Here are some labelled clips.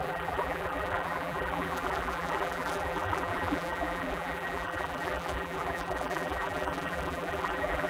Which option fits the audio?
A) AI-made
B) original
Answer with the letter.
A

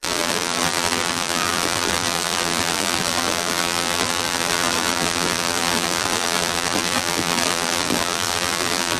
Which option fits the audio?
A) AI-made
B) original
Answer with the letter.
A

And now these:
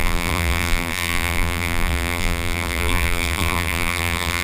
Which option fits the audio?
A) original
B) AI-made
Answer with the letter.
B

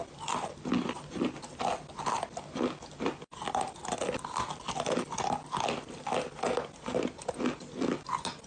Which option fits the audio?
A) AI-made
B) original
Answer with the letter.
B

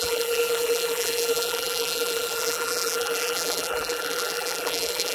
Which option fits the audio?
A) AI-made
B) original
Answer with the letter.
A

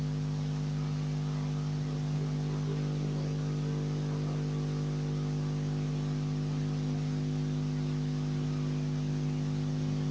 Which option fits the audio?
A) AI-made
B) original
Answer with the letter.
B